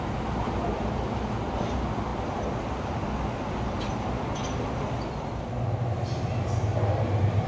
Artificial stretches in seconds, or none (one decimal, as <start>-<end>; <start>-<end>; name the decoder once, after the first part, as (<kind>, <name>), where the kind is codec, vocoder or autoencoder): none